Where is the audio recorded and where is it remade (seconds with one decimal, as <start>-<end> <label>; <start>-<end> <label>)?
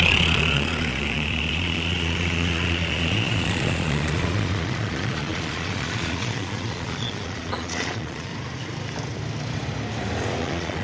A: 0.0-8.3 remade; 8.3-10.4 recorded; 10.4-10.8 remade